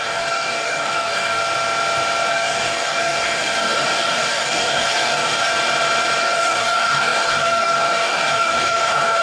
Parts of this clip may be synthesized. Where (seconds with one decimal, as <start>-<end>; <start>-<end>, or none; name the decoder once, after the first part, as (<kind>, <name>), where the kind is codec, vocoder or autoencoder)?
0.0-1.4 (codec, DAC); 2.3-5.5; 6.2-9.2